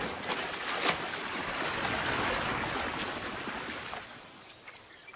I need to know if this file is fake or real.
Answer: real